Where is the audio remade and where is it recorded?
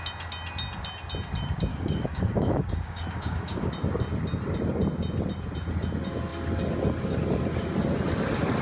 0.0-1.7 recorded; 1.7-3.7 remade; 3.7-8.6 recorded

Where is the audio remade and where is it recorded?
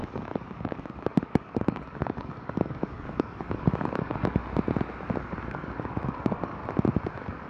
0.0-4.4 remade; 4.4-5.2 recorded; 5.2-6.6 remade; 6.6-7.1 recorded; 7.1-7.5 remade